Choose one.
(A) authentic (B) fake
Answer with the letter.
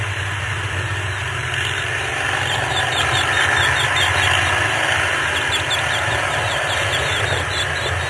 A